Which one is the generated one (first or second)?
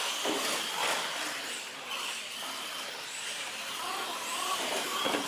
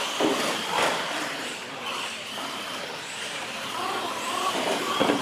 second